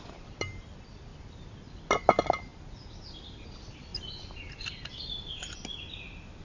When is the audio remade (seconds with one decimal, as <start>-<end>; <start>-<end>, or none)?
none